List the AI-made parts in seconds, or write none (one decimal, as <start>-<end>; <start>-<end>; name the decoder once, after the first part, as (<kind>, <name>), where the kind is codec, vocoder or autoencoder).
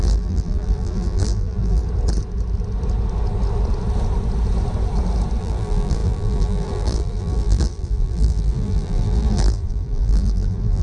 0.0-1.8 (vocoder, BigVGAN v2); 5.4-10.8